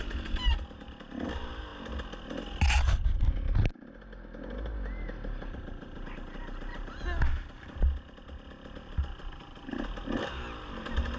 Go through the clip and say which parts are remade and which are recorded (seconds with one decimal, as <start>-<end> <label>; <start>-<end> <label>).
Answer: 0.0-11.2 recorded